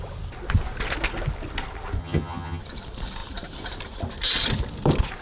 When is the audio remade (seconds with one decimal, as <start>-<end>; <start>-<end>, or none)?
2.0-2.6